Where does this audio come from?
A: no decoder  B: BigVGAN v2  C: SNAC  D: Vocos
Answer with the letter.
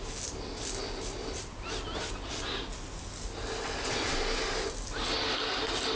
A